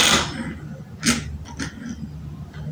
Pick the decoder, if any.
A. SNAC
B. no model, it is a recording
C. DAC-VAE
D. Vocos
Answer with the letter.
B